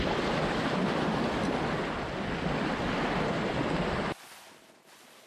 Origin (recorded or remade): recorded